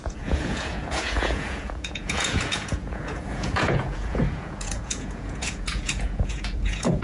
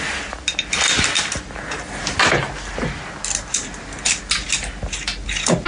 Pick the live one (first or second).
second